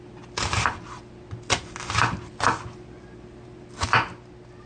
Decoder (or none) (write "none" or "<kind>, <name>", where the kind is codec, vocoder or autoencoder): none